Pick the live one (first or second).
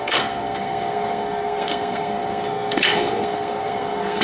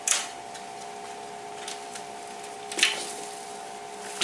second